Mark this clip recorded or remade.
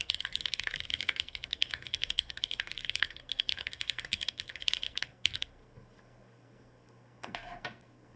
remade